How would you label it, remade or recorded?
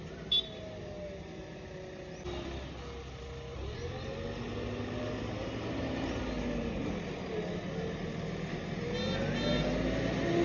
recorded